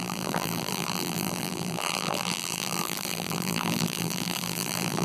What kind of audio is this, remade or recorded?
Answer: remade